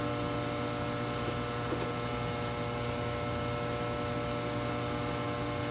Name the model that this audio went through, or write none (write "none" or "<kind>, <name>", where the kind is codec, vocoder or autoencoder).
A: none